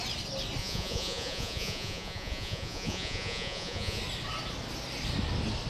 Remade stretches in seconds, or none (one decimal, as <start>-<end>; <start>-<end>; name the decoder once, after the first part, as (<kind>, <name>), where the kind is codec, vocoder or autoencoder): 0.6-4.0 (vocoder, Vocos)